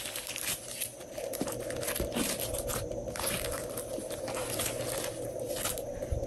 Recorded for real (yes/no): yes